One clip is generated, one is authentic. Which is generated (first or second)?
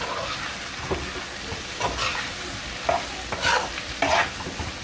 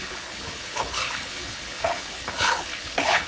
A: second